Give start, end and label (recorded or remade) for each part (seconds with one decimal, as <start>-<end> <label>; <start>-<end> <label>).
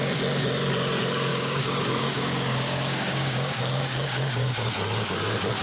0.0-1.3 recorded; 1.3-4.7 remade; 4.7-5.6 recorded